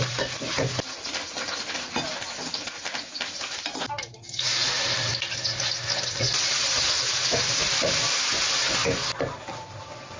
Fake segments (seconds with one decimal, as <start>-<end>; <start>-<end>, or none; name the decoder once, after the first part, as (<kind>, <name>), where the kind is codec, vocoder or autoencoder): none